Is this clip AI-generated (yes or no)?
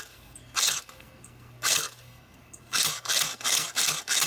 yes